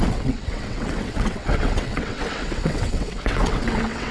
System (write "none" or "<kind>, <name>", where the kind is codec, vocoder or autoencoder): vocoder, WaveNeXt